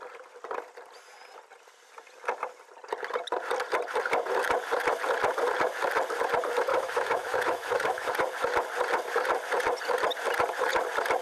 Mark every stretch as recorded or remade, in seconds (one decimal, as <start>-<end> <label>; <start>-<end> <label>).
0.0-6.7 recorded; 6.7-8.1 remade; 8.1-11.2 recorded

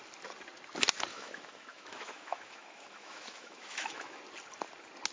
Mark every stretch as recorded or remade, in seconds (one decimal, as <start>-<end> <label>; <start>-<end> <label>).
0.0-1.1 recorded; 1.1-4.2 remade; 4.2-5.1 recorded

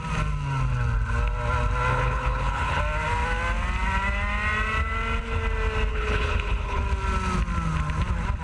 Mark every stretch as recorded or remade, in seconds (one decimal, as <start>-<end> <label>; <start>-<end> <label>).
0.0-1.9 recorded; 1.9-2.8 remade; 2.8-5.9 recorded; 5.9-6.8 remade; 6.8-8.4 recorded

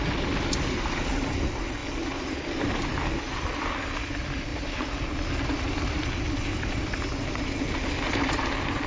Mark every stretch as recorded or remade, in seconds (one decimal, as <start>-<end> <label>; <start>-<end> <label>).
0.0-8.9 recorded

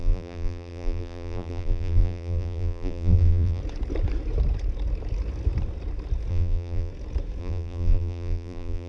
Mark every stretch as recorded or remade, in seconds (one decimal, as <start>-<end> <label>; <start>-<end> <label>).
0.0-3.6 remade; 3.6-6.3 recorded; 6.3-6.9 remade; 6.9-7.4 recorded; 7.4-8.9 remade

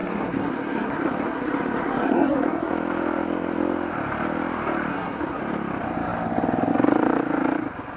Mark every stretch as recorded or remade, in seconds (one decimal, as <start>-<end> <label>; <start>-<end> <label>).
0.0-2.7 remade; 2.7-4.9 recorded; 4.9-5.4 remade; 5.4-8.0 recorded

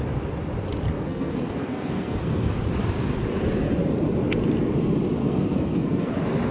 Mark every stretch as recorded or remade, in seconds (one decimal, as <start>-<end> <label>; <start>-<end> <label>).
0.0-0.9 recorded; 0.9-2.5 remade; 2.5-5.2 recorded; 5.2-6.1 remade; 6.1-6.5 recorded